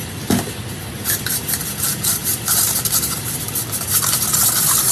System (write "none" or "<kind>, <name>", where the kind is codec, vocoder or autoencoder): none